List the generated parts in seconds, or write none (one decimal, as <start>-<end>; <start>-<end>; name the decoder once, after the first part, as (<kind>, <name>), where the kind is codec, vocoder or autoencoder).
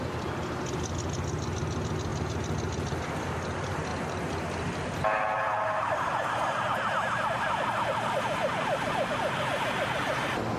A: none